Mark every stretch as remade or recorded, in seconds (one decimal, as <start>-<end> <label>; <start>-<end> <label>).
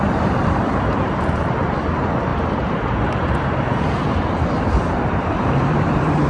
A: 0.0-3.7 remade; 3.7-5.0 recorded; 5.0-6.3 remade